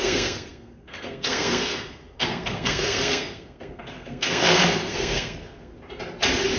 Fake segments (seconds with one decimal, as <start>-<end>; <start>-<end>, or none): 0.0-5.7